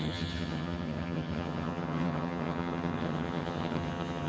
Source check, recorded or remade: remade